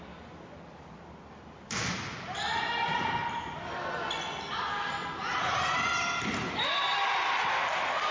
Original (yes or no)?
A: yes